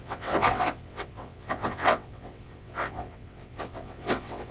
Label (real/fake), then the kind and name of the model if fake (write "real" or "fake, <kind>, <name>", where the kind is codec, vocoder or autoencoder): fake, vocoder, WaveNeXt